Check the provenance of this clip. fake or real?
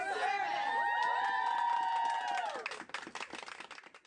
real